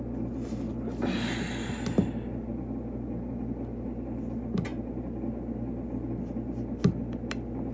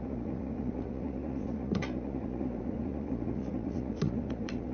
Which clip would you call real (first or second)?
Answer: first